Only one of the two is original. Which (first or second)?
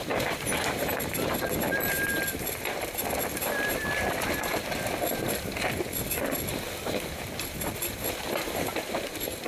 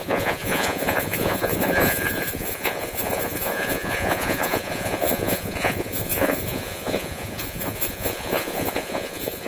first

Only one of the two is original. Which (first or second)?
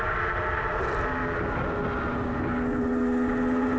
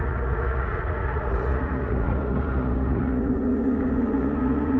first